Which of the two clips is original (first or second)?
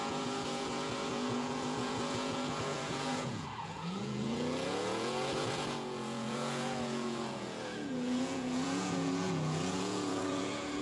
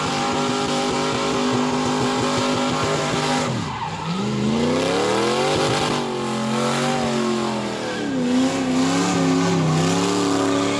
second